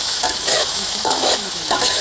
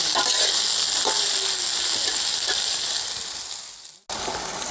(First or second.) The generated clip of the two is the first